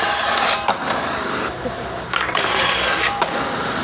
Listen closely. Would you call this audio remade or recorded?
recorded